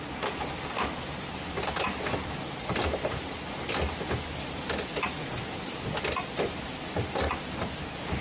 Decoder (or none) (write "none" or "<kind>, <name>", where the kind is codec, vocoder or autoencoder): none